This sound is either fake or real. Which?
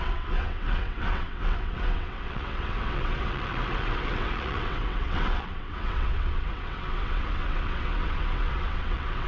fake